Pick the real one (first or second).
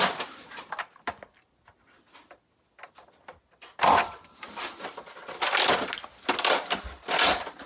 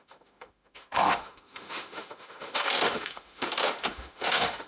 first